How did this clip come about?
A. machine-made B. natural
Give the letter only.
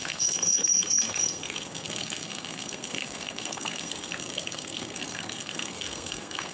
A